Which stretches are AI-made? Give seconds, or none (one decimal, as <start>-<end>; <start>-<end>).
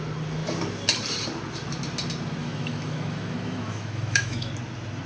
2.4-4.5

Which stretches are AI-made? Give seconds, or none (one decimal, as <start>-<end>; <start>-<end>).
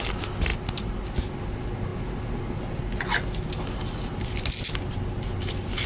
none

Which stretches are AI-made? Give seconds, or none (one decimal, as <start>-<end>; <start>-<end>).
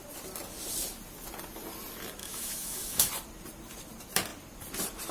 2.2-3.1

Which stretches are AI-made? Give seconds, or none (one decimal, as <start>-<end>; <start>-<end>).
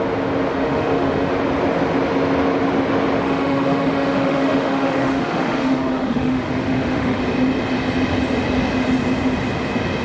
0.5-1.3; 3.2-7.2